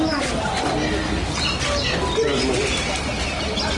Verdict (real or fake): real